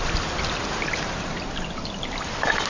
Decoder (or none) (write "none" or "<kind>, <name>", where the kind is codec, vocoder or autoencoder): none